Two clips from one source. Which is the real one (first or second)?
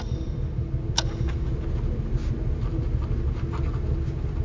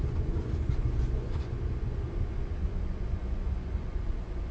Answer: first